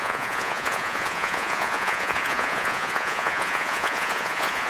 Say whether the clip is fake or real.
fake